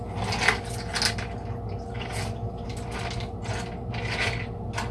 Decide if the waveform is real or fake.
real